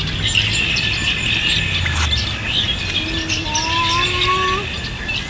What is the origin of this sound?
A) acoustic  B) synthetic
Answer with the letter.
A